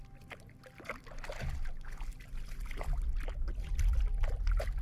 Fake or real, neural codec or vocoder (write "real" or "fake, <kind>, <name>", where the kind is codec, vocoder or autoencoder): real